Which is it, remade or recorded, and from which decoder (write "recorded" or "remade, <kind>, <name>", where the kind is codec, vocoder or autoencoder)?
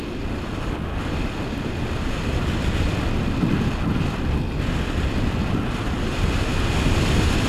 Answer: recorded